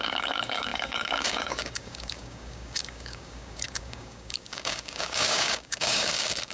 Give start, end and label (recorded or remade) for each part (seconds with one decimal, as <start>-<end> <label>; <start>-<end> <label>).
0.0-6.5 remade